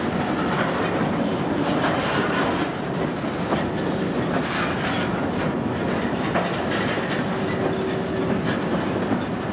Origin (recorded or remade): recorded